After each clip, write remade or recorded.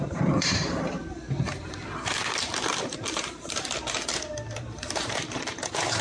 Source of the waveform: remade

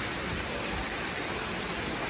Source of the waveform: recorded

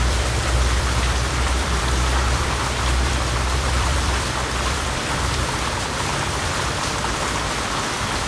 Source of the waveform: remade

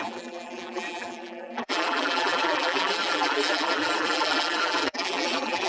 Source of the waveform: remade